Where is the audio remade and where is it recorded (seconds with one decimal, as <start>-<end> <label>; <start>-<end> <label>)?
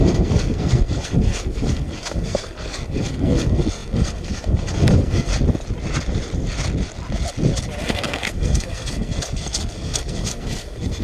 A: 0.0-5.3 remade; 5.3-7.8 recorded; 7.8-11.0 remade